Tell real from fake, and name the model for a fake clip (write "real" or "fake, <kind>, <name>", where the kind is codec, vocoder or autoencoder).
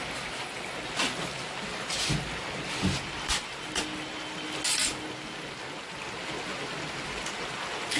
real